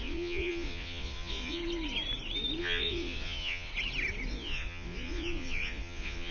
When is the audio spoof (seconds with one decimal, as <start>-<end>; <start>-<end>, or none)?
0.0-1.6; 2.6-3.7; 4.3-6.3